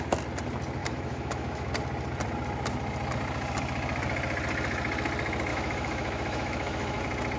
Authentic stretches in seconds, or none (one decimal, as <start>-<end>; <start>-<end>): 0.0-0.8; 1.7-5.5; 7.0-7.4